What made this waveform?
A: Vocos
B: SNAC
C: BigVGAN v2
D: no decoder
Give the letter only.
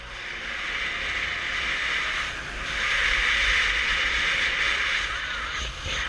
D